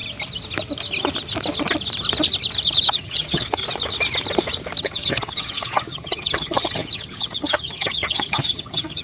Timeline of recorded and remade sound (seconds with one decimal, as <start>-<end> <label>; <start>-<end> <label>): 0.0-2.8 recorded; 2.8-3.6 remade; 3.6-4.8 recorded; 4.8-9.0 remade